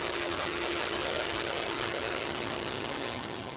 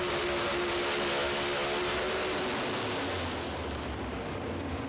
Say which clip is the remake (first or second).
first